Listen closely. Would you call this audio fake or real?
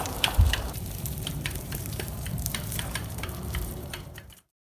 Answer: fake